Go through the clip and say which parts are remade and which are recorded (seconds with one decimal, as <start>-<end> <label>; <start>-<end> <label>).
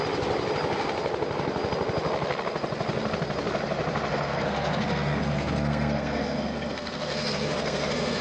0.0-4.1 recorded; 4.1-8.2 remade